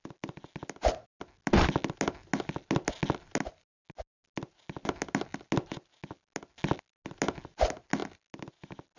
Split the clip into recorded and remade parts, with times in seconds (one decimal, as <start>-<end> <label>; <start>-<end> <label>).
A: 0.0-9.0 recorded